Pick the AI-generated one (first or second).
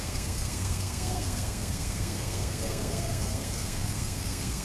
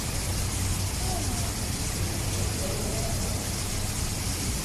first